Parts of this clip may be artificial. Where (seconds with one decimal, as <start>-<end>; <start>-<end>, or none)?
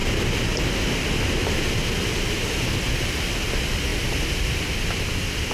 none